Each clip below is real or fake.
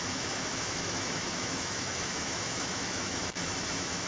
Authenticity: fake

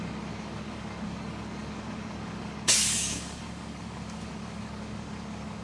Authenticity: fake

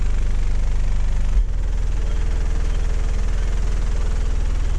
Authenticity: real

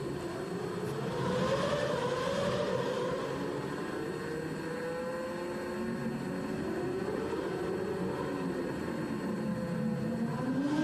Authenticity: real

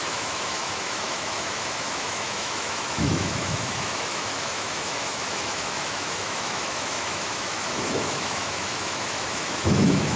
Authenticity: fake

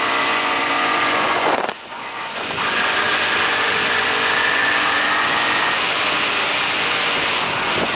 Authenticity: fake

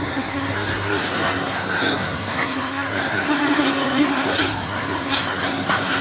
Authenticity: fake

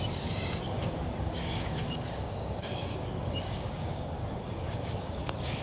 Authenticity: fake